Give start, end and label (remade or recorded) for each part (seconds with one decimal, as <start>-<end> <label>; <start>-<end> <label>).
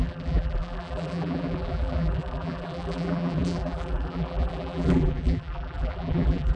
0.0-6.6 remade